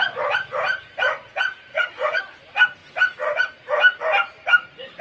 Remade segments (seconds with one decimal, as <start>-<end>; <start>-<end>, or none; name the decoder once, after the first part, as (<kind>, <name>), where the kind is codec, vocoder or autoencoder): 1.7-2.2 (vocoder, Vocos)